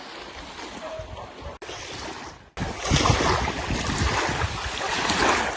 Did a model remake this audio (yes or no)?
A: no